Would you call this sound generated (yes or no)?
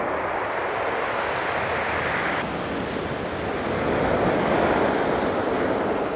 no